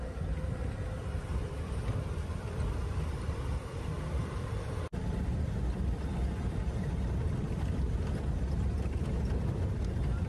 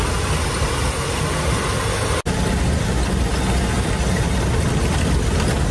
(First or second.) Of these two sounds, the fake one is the first